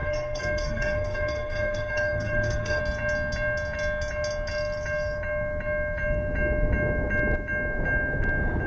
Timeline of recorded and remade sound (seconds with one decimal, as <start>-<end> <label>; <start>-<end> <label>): 0.0-2.8 remade; 2.8-8.7 recorded